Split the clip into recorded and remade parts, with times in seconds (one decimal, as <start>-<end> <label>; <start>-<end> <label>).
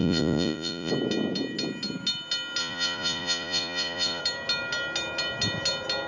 0.0-0.9 remade; 0.9-2.6 recorded; 2.6-4.2 remade; 4.2-6.1 recorded